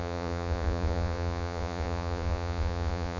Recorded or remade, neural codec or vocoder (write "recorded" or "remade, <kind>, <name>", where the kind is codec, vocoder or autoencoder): remade, vocoder, Vocos